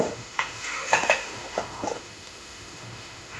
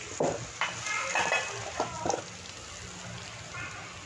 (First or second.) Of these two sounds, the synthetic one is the first